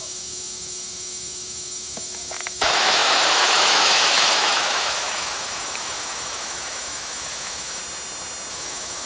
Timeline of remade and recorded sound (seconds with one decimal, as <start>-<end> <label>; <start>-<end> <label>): 0.0-7.8 remade; 7.8-8.5 recorded; 8.5-9.1 remade